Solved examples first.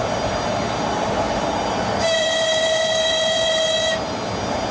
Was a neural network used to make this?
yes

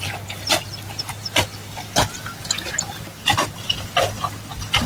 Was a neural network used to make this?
no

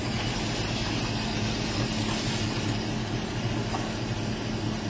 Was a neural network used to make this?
no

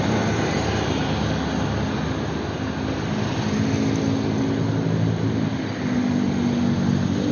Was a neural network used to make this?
no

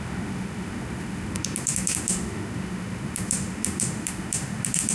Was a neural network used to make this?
yes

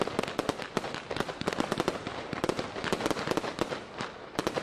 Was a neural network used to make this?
no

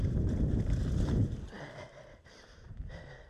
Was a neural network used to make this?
yes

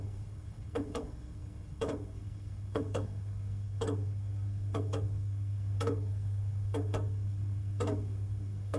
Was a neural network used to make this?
yes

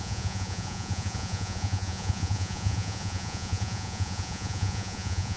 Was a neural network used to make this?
yes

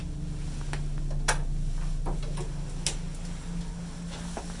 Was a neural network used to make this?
no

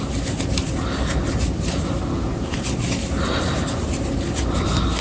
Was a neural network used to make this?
no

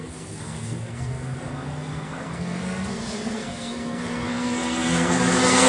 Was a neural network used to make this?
yes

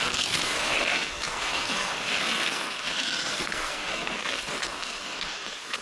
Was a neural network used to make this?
yes